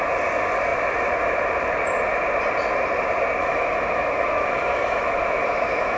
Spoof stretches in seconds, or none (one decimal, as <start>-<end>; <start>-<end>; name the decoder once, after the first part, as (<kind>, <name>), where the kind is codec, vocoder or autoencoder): 3.4-6.0 (autoencoder, DAC-VAE)